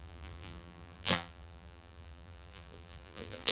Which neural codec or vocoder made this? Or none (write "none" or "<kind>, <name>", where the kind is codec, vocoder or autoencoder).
vocoder, BigVGAN v2